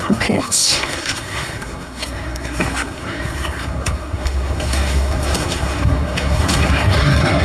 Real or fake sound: fake